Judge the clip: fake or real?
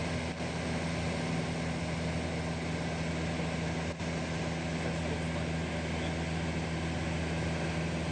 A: real